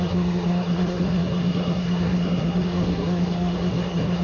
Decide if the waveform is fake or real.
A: fake